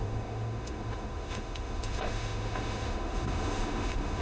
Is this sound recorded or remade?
remade